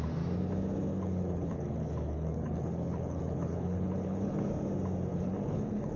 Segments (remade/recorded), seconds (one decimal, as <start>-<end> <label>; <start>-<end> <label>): 0.0-0.9 recorded; 0.9-4.5 remade; 4.5-5.1 recorded; 5.1-6.0 remade